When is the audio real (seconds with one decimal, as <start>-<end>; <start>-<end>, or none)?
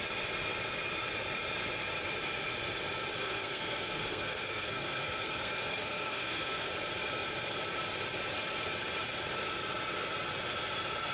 0.0-3.2; 6.7-11.1